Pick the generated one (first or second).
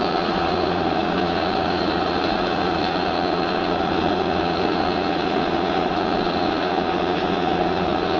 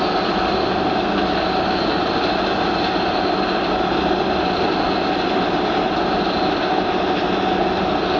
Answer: first